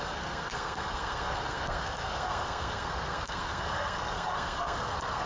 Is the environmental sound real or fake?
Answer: fake